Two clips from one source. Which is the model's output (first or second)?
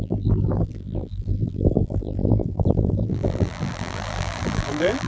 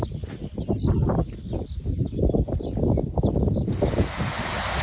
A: first